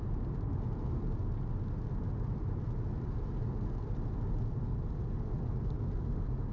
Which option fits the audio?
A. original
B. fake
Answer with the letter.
A